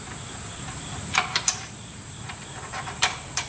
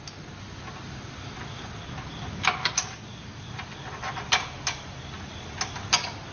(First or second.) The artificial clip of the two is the first